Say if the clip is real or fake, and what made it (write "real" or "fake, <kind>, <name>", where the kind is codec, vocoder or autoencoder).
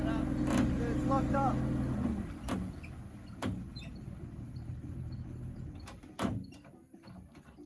real